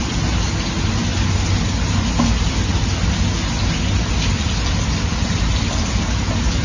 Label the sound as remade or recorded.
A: recorded